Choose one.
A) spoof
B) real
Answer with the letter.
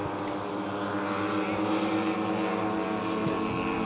B